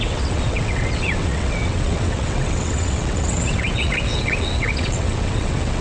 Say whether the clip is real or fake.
fake